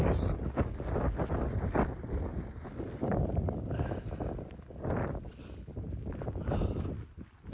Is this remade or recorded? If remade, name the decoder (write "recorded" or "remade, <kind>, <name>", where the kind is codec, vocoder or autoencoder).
recorded